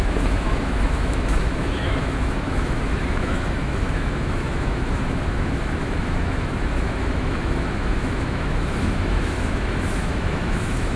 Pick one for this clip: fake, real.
fake